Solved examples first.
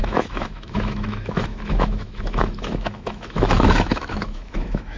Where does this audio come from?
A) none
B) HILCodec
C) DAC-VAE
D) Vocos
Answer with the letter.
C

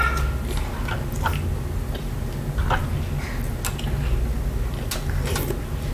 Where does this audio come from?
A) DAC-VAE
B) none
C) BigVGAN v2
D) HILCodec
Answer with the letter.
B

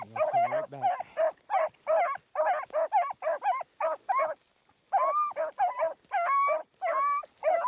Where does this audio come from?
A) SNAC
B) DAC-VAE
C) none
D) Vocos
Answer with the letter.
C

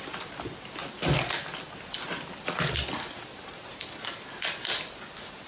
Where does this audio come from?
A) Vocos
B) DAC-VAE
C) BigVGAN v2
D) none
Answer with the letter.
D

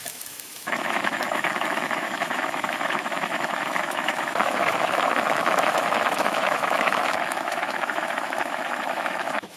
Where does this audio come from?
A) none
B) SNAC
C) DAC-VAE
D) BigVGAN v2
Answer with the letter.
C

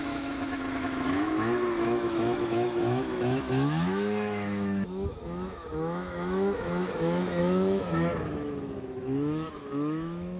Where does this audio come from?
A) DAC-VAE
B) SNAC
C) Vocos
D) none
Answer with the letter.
A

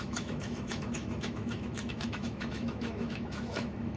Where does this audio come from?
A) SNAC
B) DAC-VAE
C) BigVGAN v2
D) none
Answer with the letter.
B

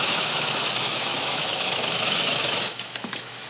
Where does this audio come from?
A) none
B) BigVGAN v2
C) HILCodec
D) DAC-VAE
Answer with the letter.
D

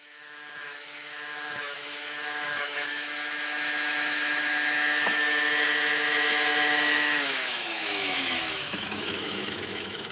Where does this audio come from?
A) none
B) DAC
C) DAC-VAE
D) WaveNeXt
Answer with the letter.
C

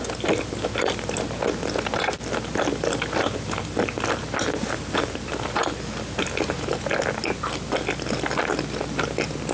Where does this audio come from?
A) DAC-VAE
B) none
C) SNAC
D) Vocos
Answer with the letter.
B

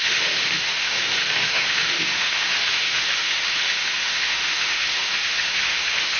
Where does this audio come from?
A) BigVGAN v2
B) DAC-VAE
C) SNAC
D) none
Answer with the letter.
B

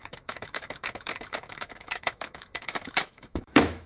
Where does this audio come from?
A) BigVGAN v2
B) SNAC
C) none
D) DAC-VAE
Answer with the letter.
D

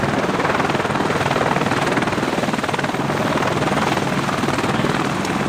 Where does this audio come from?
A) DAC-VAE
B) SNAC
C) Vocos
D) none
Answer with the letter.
D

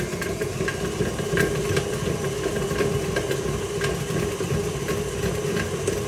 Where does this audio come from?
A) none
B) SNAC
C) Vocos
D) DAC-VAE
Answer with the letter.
A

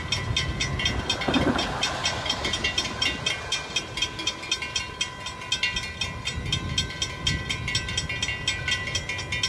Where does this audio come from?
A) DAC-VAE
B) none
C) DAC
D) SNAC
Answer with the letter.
B